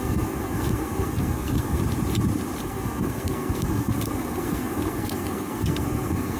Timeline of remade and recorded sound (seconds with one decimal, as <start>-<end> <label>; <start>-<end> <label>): 0.0-1.8 remade; 1.8-2.6 recorded; 2.6-6.4 remade